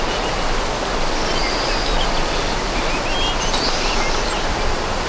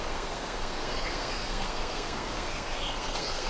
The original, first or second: first